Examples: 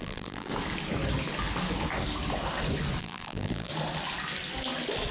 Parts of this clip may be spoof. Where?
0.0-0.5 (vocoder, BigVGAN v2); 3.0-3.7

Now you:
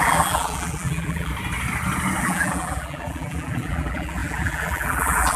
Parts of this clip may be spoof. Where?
0.0-1.3 (vocoder, BigVGAN v2); 2.2-5.4

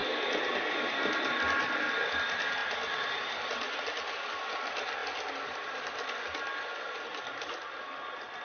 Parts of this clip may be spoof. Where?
none

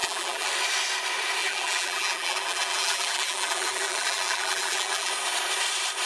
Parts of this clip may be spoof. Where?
0.0-0.5 (vocoder, BigVGAN v2); 1.4-5.1

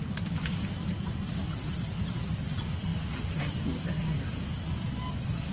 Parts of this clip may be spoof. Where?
none

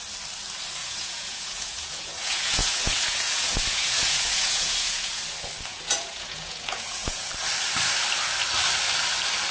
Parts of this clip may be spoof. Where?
0.8-5.3 (vocoder, Vocos); 5.7-7.3